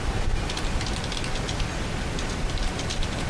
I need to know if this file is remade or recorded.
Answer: remade